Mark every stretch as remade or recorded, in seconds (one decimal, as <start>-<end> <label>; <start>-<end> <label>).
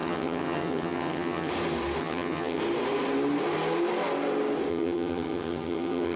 0.0-1.5 remade; 1.5-2.0 recorded; 2.0-2.6 remade; 2.6-4.7 recorded; 4.7-6.2 remade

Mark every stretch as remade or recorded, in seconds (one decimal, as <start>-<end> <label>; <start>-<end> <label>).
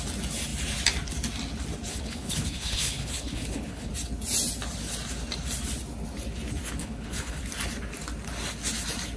0.0-1.9 recorded; 1.9-3.9 remade; 3.9-6.8 recorded; 6.8-7.4 remade; 7.4-9.2 recorded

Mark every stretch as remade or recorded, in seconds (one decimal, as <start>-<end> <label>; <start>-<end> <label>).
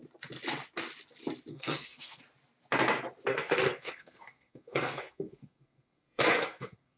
0.0-1.5 recorded; 1.5-2.2 remade; 2.2-3.3 recorded; 3.3-7.0 remade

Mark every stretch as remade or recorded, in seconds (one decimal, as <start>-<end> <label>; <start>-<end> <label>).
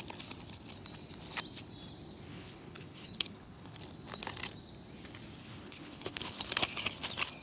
0.0-2.3 recorded; 2.3-3.8 remade; 3.8-5.4 recorded; 5.4-6.4 remade; 6.4-7.4 recorded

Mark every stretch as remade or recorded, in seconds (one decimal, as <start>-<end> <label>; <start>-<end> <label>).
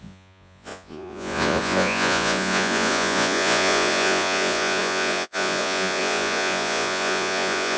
0.0-7.8 remade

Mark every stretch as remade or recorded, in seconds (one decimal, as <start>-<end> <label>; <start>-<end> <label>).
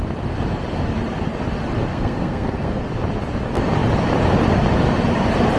0.0-1.9 recorded; 1.9-2.8 remade; 2.8-5.6 recorded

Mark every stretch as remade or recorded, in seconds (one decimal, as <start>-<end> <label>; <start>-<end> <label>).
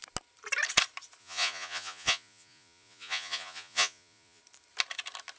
0.0-1.2 recorded; 1.2-4.4 remade; 4.4-5.4 recorded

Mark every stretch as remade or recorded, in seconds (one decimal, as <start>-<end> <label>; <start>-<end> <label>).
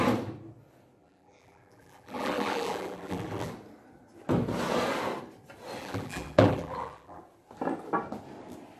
0.0-1.0 recorded; 1.0-3.5 remade; 3.5-5.8 recorded; 5.8-7.2 remade; 7.2-8.8 recorded